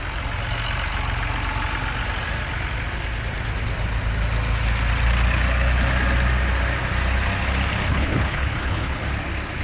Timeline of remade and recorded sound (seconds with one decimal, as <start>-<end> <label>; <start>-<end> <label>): 0.0-7.9 recorded; 7.9-9.0 remade; 9.0-9.6 recorded